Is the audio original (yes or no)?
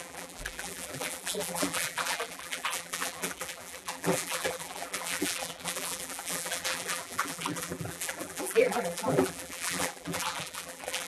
no